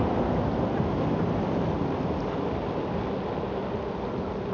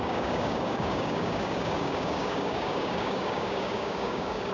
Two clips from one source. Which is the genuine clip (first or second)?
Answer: first